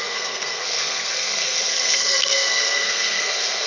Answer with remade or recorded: remade